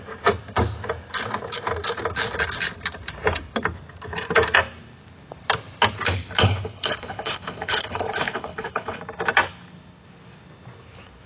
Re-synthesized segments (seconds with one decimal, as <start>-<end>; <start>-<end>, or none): 6.4-9.0